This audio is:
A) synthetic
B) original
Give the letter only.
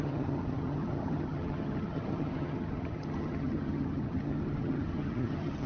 A